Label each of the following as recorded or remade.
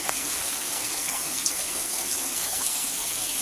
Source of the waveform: remade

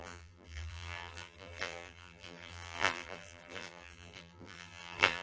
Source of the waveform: remade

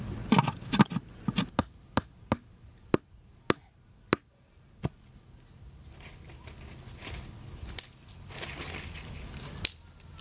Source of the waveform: recorded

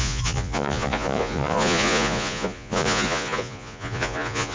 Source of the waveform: remade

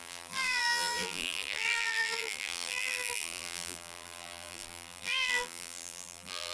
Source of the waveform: remade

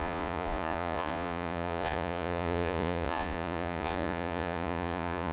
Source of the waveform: remade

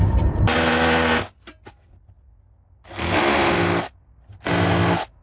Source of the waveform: recorded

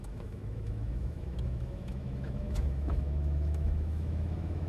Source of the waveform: remade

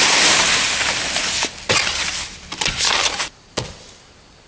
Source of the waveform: recorded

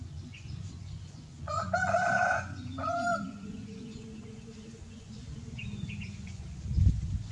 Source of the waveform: remade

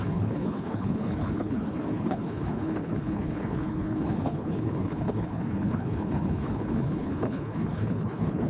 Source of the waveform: remade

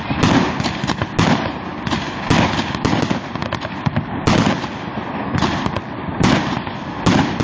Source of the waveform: recorded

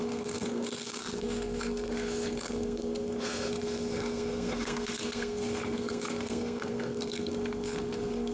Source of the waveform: remade